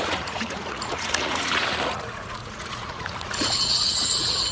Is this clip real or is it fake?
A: fake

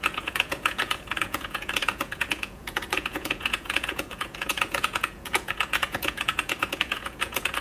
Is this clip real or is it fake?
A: fake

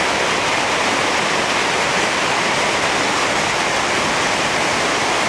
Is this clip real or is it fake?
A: real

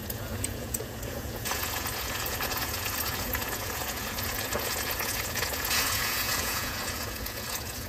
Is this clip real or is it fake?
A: fake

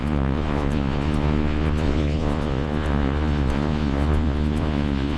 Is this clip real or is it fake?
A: fake